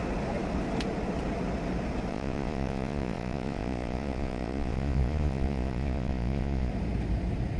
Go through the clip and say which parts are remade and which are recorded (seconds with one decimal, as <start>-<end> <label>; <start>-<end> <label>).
0.0-2.1 recorded; 2.1-6.7 remade; 6.7-7.6 recorded